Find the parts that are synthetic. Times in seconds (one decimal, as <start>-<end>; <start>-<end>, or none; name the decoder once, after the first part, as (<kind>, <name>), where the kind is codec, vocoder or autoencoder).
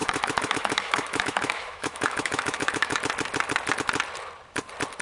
0.0-3.0 (autoencoder, DAC-VAE)